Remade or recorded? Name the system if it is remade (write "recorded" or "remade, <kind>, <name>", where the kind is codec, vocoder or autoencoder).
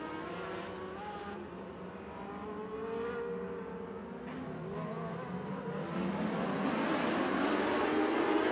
recorded